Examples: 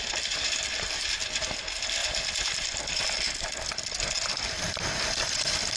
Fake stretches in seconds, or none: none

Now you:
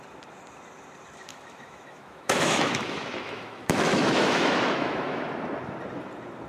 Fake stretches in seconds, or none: 1.3-5.2 (autoencoder, DAC-VAE)

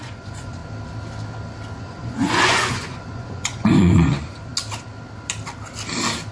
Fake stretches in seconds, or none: 0.0-0.6 (vocoder, Vocos); 1.8-4.5

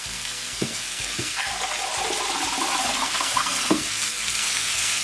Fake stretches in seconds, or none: 0.0-1.5 (codec, SNAC); 2.8-5.0